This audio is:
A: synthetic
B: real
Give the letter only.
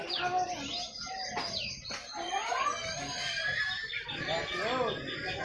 B